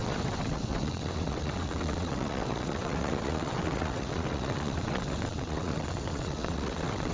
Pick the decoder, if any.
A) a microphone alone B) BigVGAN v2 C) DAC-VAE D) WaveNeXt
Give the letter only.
D